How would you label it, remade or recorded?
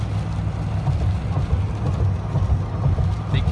recorded